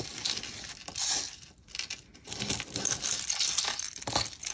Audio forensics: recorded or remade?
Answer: recorded